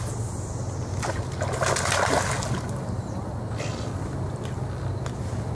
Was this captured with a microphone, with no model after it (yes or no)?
yes